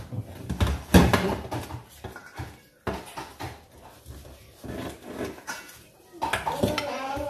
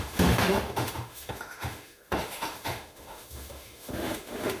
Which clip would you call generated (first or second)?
second